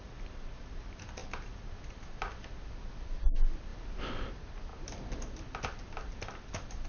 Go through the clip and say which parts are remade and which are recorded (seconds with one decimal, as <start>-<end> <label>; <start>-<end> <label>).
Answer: 0.0-3.7 recorded; 3.7-4.3 remade; 4.3-6.9 recorded